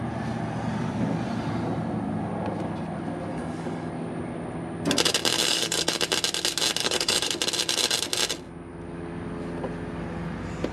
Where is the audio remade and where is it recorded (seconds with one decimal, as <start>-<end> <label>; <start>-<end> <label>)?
0.0-3.3 recorded; 3.3-3.9 remade; 3.9-5.4 recorded; 5.4-6.0 remade; 6.0-6.8 recorded; 6.8-7.3 remade; 7.3-10.7 recorded